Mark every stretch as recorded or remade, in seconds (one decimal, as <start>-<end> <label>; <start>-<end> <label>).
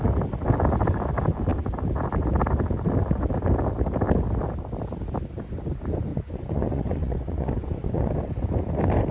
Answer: 0.0-6.1 recorded; 6.1-8.1 remade; 8.1-9.1 recorded